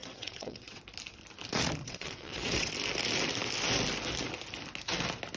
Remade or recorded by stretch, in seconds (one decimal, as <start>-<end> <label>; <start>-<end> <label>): 0.0-0.8 remade; 0.8-1.8 recorded; 1.8-2.7 remade; 2.7-5.4 recorded